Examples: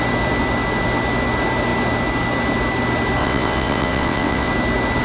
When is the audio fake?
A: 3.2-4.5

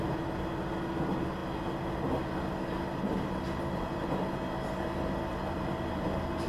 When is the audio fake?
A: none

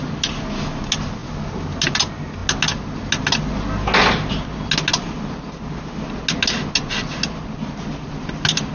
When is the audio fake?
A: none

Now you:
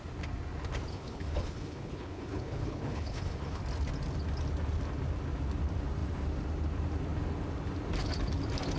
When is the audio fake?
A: 0.9-3.6